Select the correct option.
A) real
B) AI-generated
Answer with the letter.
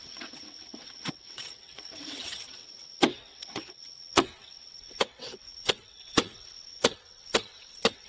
B